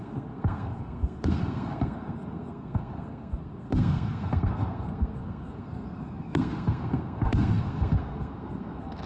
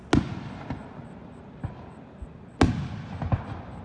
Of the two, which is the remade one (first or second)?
first